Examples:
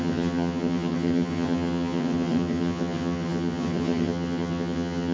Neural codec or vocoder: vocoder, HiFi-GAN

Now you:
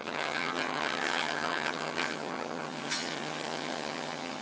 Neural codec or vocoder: vocoder, HiFi-GAN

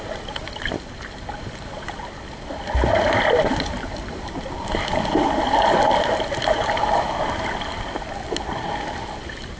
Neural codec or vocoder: none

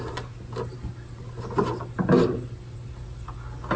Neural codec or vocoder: none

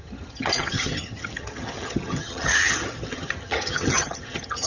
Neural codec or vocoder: vocoder, HiFi-GAN